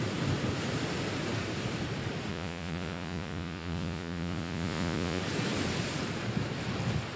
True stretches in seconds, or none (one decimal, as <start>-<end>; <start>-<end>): 0.0-2.3; 5.2-7.2